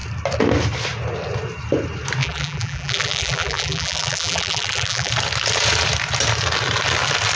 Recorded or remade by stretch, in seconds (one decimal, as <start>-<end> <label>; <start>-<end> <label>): 0.0-2.2 recorded; 2.2-5.1 remade; 5.1-7.4 recorded